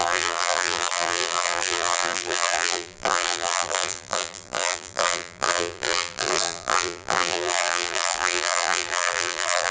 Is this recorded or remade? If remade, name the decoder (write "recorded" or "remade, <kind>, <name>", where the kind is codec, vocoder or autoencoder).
remade, vocoder, BigVGAN v2